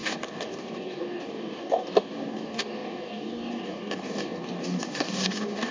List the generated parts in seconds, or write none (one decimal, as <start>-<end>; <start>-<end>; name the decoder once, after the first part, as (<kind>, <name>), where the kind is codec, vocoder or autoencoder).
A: 0.0-5.7 (codec, DAC)